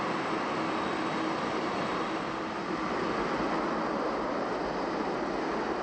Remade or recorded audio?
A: recorded